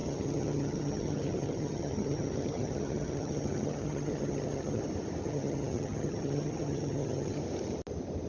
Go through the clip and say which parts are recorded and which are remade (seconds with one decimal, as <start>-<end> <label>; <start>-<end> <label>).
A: 0.0-4.8 remade; 4.8-5.2 recorded; 5.2-7.4 remade; 7.4-8.3 recorded